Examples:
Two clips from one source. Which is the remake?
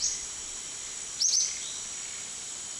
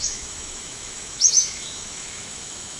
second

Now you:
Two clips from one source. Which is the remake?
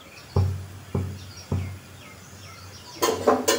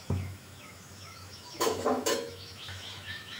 second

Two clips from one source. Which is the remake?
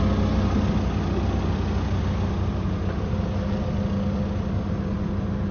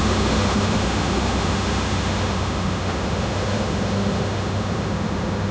second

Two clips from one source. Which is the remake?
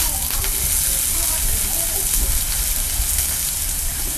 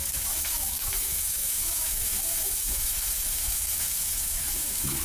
second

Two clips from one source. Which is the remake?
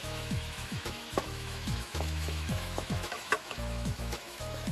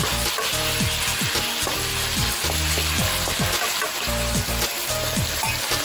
first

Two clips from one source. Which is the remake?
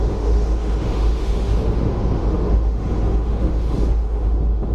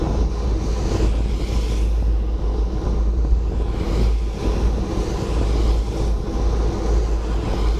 first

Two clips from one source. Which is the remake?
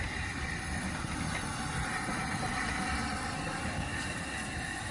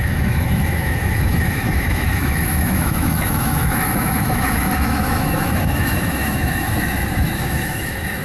second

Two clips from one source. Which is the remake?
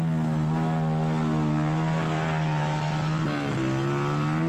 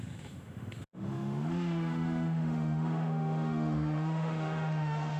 second